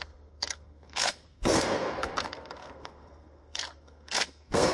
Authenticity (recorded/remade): remade